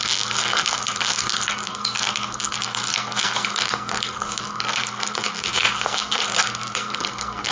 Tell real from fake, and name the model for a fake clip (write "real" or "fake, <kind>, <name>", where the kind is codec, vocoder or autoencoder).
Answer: fake, codec, SNAC